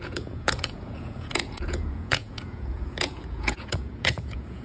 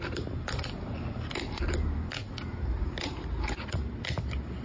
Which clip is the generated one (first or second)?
first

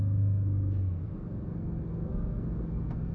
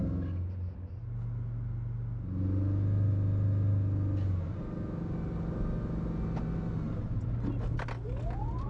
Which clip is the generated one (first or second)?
first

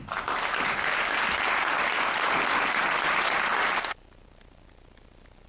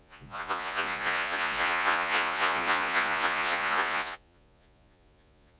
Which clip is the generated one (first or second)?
second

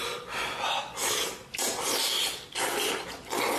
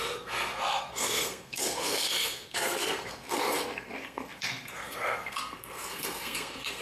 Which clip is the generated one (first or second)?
second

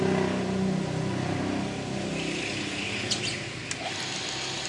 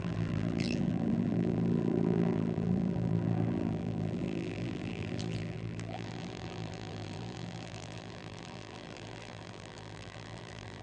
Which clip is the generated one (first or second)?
second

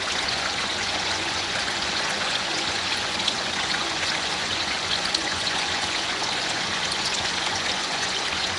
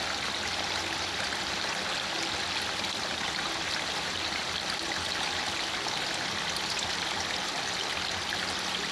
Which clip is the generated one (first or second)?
first